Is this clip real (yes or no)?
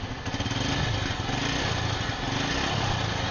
yes